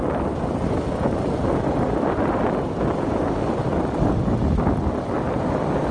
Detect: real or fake real